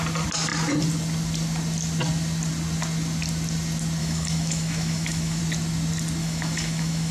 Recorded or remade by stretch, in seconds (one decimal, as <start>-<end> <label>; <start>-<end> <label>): 0.0-4.0 recorded; 4.0-5.4 remade; 5.4-6.2 recorded; 6.2-7.1 remade